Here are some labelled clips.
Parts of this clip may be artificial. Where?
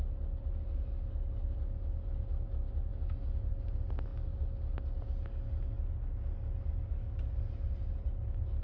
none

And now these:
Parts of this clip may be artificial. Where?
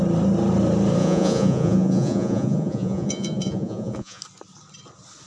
1.0-4.2 (vocoder, Vocos)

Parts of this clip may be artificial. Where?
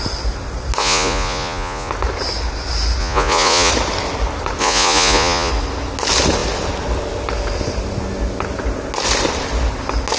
0.8-1.9 (vocoder, Vocos); 3.0-3.7; 4.6-5.5